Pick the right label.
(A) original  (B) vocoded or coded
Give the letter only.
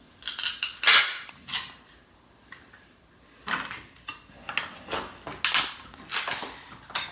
A